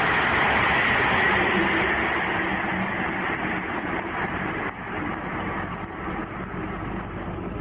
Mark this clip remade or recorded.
recorded